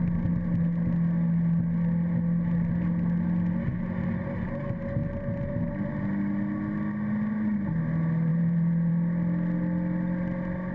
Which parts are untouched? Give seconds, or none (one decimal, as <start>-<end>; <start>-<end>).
0.0-8.3; 8.9-10.7